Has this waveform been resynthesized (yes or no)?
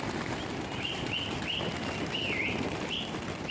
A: no